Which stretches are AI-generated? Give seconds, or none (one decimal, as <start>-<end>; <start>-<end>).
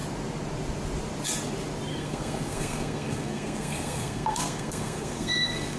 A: 1.9-5.8